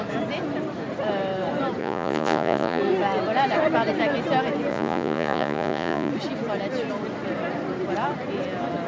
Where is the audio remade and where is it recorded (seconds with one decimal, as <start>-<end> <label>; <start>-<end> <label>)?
0.0-1.8 recorded; 1.8-2.8 remade; 2.8-4.7 recorded; 4.7-6.1 remade; 6.1-8.9 recorded